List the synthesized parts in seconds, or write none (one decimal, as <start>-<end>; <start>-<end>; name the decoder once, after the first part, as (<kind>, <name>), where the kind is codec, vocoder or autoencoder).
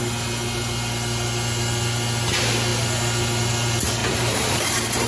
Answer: 4.0-5.1 (vocoder, BigVGAN v2)